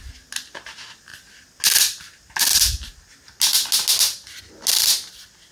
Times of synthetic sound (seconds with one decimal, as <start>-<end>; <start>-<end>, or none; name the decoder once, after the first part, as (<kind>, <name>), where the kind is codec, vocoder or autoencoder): none